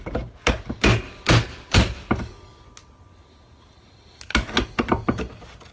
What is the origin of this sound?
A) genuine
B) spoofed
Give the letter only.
A